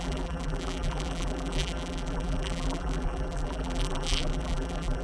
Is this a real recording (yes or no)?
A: no